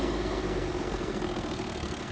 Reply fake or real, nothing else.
fake